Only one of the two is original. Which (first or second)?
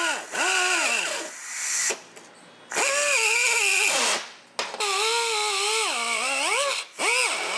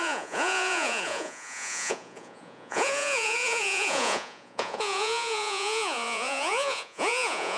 first